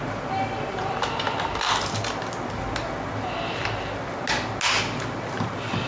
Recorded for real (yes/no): yes